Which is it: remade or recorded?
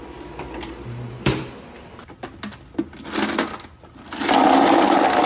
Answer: recorded